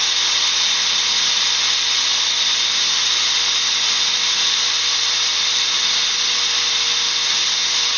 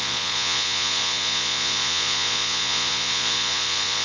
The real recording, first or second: first